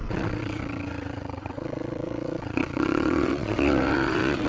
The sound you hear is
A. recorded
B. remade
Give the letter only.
B